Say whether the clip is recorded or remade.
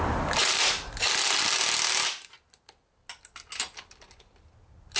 recorded